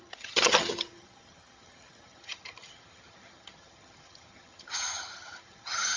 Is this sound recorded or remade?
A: remade